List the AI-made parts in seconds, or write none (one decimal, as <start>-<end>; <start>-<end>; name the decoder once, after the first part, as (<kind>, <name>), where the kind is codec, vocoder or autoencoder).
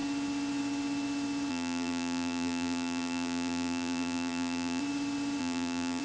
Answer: 1.5-4.8 (vocoder, BigVGAN v2); 5.4-6.0